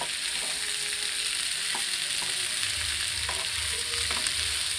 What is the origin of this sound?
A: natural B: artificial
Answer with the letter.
A